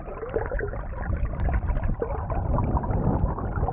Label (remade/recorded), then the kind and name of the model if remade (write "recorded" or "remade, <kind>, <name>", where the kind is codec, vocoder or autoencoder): recorded